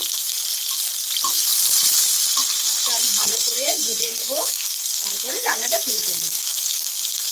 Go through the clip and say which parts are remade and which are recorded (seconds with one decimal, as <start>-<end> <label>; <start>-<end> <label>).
0.0-0.4 remade; 0.4-3.0 recorded; 3.0-7.3 remade